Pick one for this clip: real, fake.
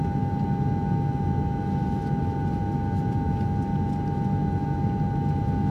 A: real